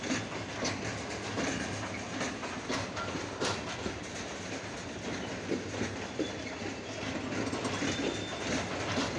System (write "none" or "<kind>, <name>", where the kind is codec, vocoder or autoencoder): none